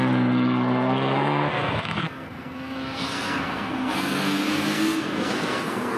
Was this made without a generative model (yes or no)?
no